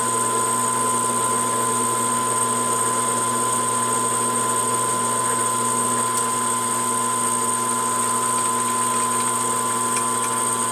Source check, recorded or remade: recorded